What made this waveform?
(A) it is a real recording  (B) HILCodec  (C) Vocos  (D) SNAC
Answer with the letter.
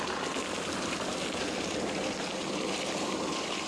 A